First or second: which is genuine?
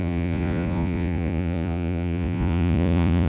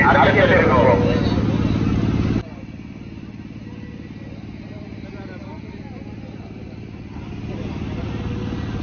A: second